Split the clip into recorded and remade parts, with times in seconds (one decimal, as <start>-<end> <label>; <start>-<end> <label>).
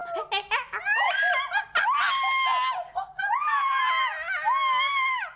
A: 0.0-3.2 recorded; 3.2-4.1 remade; 4.1-5.4 recorded